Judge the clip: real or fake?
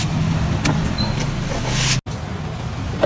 real